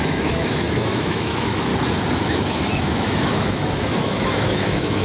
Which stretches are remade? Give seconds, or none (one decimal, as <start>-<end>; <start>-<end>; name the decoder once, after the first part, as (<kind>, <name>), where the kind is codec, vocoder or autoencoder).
0.0-1.7 (autoencoder, DAC-VAE); 2.3-5.0